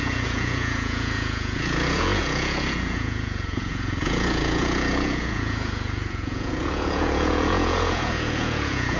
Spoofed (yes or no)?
yes